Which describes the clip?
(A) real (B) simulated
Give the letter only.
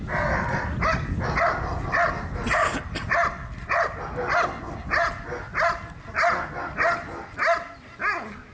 A